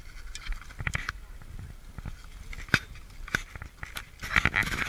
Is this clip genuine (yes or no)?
yes